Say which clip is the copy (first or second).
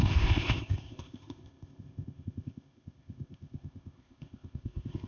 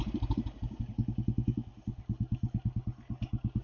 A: first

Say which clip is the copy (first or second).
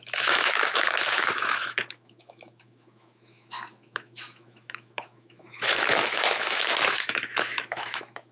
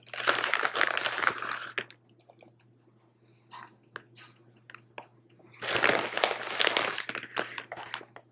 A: first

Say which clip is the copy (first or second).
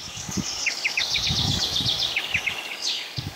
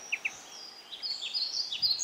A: first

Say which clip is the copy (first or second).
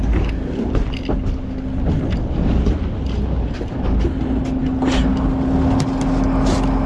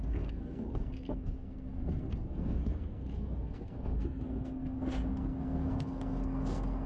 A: second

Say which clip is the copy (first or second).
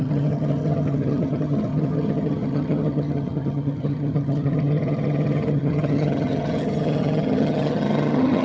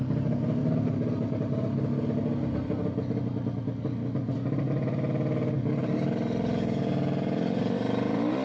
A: first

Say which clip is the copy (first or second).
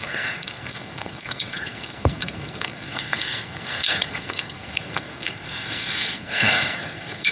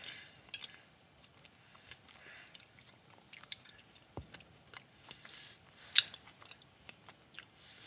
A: first